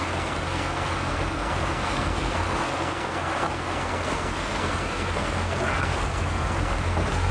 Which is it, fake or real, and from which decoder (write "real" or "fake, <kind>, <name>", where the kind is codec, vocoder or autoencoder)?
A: fake, codec, SNAC